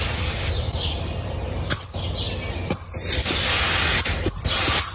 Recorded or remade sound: recorded